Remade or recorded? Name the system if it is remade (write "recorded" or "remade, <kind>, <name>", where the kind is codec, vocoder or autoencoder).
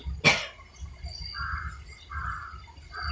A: recorded